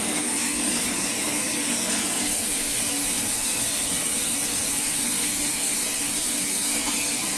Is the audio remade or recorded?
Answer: remade